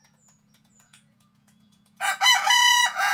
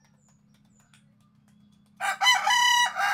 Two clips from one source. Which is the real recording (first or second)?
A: second